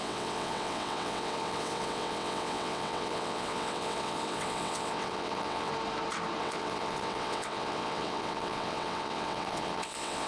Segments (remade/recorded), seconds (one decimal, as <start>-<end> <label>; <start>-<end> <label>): 0.0-5.7 remade; 5.7-6.4 recorded; 6.4-10.3 remade